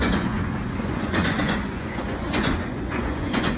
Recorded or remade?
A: remade